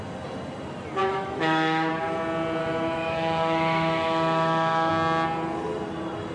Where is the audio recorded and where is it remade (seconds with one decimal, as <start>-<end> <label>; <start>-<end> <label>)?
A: 0.0-1.0 recorded; 1.0-1.9 remade; 1.9-2.6 recorded; 2.6-4.9 remade; 4.9-6.3 recorded